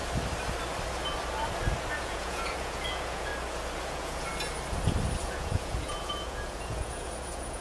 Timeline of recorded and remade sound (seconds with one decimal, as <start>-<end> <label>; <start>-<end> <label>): 0.0-1.9 recorded; 1.9-3.3 remade; 3.3-3.8 recorded; 3.8-4.3 remade; 4.3-5.2 recorded; 5.2-7.6 remade